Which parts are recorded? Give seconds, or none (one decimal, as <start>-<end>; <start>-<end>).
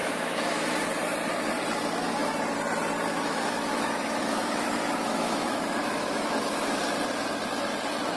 0.9-3.1; 6.8-8.2